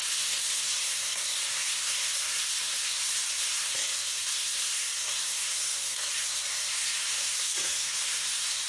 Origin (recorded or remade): remade